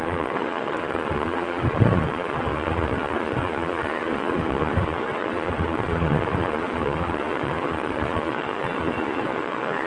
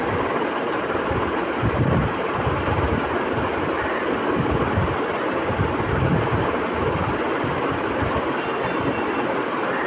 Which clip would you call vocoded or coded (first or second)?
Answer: first